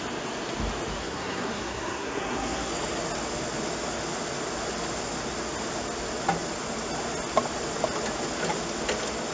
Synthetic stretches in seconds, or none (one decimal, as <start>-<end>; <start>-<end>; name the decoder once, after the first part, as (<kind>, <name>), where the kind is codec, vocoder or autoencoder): 1.0-2.7 (codec, SNAC)